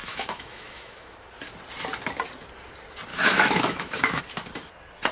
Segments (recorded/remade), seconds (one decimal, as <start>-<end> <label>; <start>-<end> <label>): 0.0-1.3 remade; 1.3-3.1 recorded; 3.1-4.2 remade; 4.2-5.1 recorded